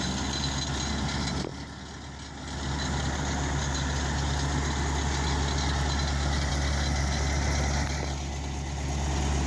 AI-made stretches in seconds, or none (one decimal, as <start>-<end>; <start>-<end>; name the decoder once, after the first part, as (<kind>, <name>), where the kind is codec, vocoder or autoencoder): none